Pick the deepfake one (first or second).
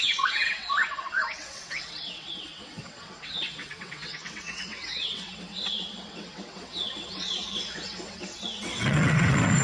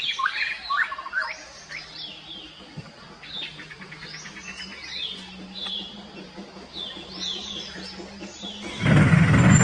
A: first